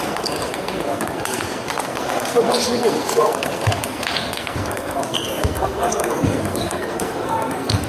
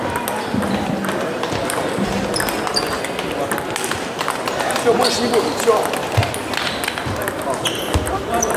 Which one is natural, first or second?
second